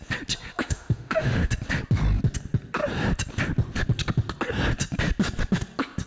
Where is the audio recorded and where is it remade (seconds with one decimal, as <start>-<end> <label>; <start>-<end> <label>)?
0.0-0.6 recorded; 0.6-1.5 remade; 1.5-6.1 recorded